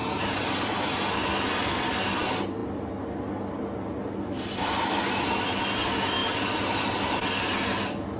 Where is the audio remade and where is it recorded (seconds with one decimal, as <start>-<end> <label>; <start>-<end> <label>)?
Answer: 0.0-0.7 remade; 0.7-8.2 recorded